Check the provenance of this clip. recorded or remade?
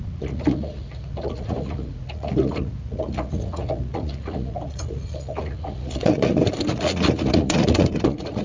remade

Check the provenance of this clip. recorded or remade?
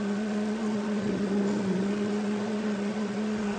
remade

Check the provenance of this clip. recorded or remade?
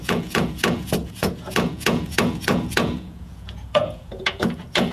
remade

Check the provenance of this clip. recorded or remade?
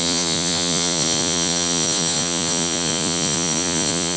remade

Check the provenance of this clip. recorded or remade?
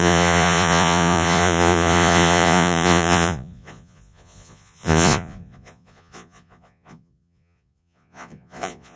remade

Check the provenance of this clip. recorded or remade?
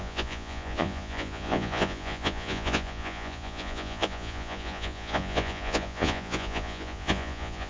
remade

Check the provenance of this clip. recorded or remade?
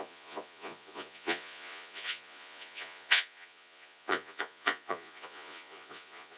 remade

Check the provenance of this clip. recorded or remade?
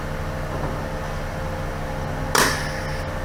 recorded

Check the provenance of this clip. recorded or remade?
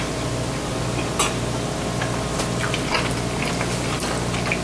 recorded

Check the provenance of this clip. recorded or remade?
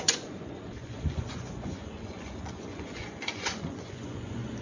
remade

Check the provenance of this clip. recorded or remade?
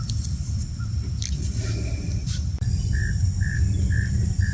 recorded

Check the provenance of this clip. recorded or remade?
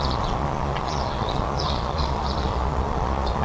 remade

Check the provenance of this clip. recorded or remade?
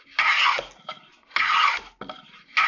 recorded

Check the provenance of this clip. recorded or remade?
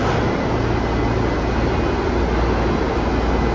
recorded